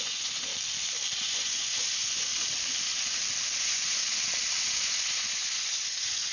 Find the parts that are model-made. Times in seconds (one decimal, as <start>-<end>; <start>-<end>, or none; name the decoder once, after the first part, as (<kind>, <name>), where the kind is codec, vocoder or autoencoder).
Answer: 0.0-0.5 (vocoder, Vocos); 1.2-2.3; 3.6-4.0; 4.8-6.3

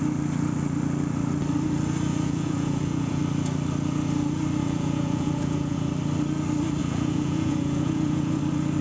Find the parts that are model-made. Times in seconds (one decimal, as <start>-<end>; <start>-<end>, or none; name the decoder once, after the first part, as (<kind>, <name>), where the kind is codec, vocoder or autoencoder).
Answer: 2.1-3.2 (vocoder, Vocos); 4.6-5.9; 6.8-8.4

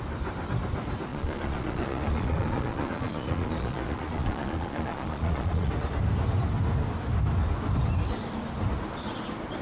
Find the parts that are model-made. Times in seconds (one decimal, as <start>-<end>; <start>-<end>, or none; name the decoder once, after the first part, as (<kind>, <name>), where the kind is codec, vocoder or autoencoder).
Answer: 1.1-5.7 (vocoder, Vocos)

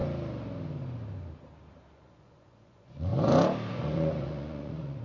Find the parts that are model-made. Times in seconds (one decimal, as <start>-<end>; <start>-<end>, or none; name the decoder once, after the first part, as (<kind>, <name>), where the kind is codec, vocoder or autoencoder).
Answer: 1.9-3.1 (vocoder, Vocos); 3.7-5.0

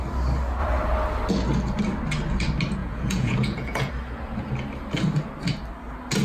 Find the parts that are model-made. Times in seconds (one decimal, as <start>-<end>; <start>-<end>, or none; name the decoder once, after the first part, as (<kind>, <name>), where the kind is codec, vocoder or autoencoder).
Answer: 2.8-3.9 (vocoder, Vocos)